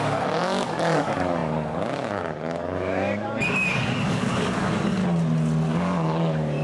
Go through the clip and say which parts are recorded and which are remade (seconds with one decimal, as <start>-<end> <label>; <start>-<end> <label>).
0.0-5.0 remade; 5.0-5.7 recorded; 5.7-6.6 remade